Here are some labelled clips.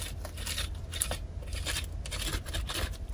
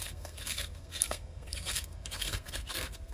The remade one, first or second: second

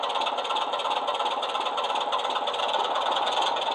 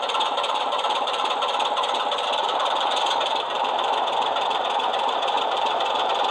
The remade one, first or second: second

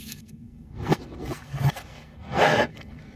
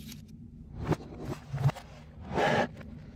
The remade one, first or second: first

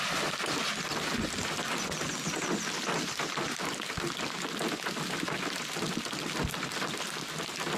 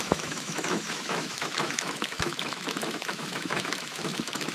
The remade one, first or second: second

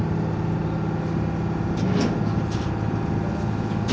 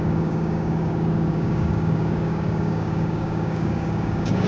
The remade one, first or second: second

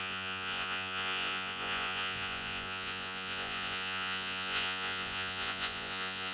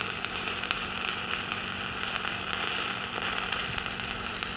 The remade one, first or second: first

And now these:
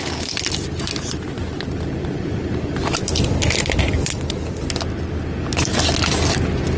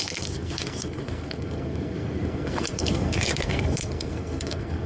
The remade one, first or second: second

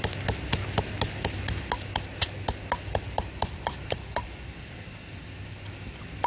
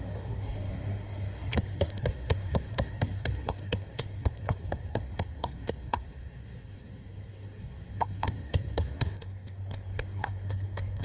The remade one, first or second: second